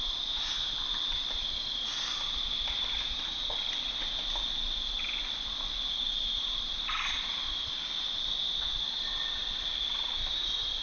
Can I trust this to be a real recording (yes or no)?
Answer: yes